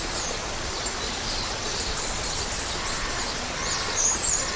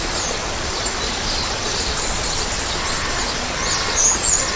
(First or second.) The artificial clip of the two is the first